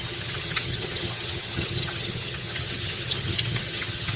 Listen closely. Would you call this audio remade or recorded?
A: remade